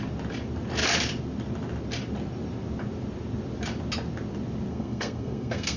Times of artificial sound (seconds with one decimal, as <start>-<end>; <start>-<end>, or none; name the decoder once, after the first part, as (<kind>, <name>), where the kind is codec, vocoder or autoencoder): 4.7-5.8 (codec, SNAC)